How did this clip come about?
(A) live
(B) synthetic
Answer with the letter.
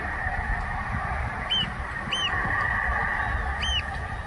A